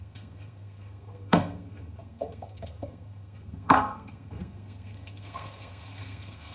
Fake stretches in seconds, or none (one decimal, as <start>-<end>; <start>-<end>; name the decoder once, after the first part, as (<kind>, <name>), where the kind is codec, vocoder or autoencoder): 0.0-6.5 (codec, SNAC)